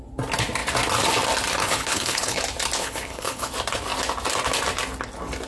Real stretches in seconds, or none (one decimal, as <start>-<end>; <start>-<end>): 0.0-1.6; 2.4-2.8; 3.5-5.5